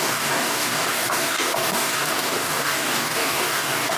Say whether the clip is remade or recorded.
remade